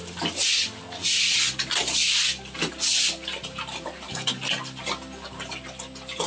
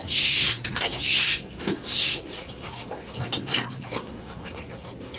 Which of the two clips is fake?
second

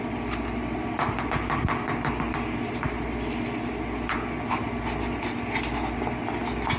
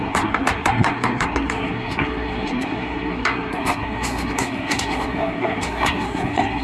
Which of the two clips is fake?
second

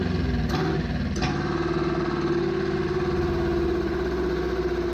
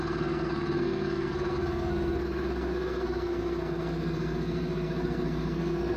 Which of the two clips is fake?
second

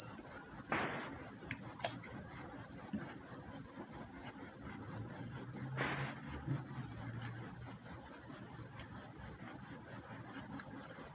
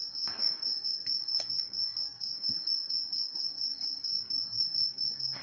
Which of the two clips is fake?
second